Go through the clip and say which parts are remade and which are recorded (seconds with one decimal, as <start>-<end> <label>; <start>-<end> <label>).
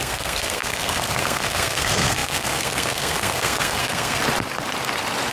0.0-4.2 remade; 4.2-5.3 recorded